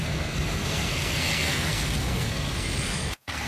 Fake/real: fake